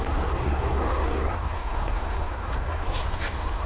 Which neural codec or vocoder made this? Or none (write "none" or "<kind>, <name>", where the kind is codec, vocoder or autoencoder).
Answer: codec, SNAC